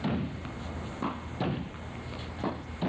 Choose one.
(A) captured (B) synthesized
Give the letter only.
A